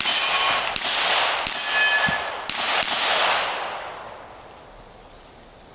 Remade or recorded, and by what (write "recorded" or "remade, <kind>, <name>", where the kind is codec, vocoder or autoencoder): recorded